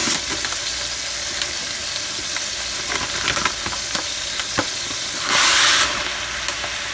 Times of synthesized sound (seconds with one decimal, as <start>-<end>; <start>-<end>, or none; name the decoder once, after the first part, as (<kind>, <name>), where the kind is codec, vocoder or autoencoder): 0.0-0.7 (vocoder, BigVGAN v2); 1.8-5.9